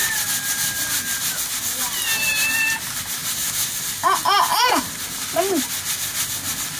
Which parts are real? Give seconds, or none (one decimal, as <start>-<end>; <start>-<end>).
0.0-6.8